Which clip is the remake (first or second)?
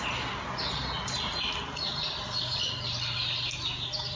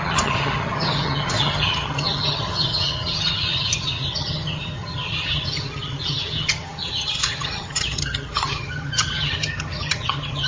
second